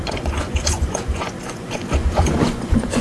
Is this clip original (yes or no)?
no